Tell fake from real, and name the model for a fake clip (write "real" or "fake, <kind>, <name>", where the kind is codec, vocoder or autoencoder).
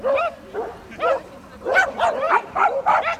fake, vocoder, BigVGAN v2